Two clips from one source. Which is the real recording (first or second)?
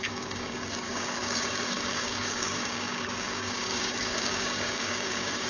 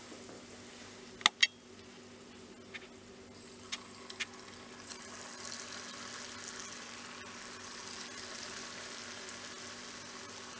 second